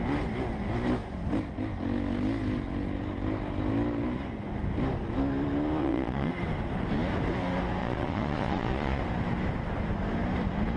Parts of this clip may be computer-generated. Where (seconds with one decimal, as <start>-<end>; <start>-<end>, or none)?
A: 5.8-6.3; 7.8-9.0